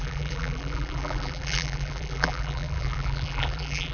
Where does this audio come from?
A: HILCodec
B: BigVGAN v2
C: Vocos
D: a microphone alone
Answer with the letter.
B